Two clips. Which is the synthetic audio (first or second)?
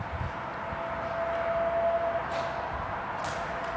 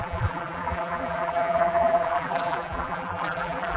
second